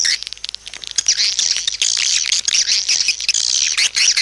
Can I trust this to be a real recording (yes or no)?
yes